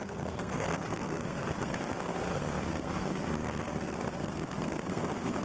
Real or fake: fake